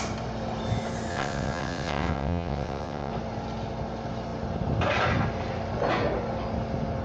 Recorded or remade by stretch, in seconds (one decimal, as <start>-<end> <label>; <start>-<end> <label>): 0.0-1.1 recorded; 1.1-3.1 remade; 3.1-7.0 recorded